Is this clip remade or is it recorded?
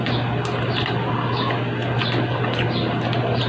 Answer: recorded